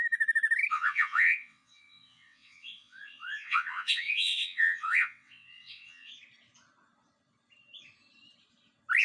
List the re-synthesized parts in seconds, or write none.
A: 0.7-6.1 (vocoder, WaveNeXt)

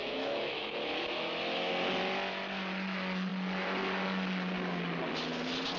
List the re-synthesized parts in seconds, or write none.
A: 0.0-1.7 (autoencoder, DAC-VAE)

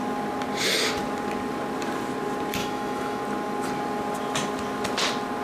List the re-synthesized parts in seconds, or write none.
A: 2.6-3.2 (autoencoder, DAC-VAE)

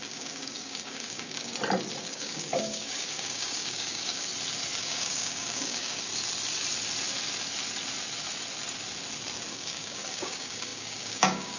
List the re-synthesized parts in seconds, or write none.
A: 0.0-1.5 (codec, DAC); 2.0-4.3; 4.8-6.1; 9.5-11.6